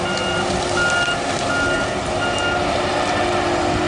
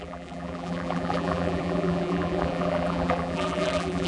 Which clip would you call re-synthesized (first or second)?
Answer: second